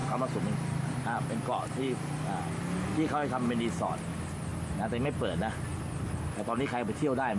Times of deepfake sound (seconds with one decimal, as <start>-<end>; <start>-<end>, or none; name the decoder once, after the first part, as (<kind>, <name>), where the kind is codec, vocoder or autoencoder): 0.0-2.3 (vocoder, BigVGAN v2)